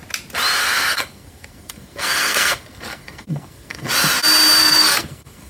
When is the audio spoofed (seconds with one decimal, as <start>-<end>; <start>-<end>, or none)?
0.6-3.9; 4.6-5.5